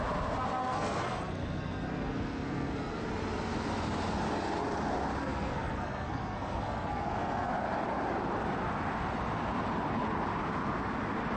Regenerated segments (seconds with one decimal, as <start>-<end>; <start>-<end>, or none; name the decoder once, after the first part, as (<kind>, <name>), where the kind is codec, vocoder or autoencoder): 0.6-3.0 (codec, SNAC); 5.2-7.5